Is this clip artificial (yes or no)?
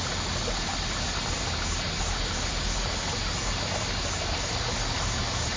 no